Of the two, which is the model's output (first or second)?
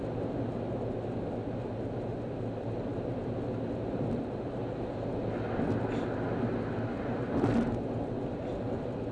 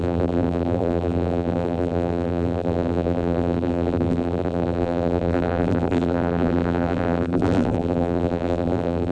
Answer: second